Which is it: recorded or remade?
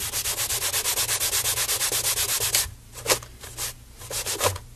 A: recorded